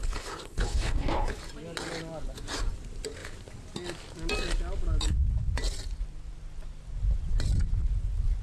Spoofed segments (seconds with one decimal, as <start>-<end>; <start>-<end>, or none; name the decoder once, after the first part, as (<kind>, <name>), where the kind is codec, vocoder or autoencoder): 0.0-1.4 (codec, HILCodec)